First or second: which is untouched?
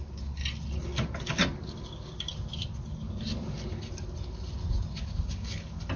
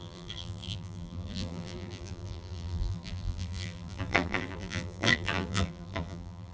first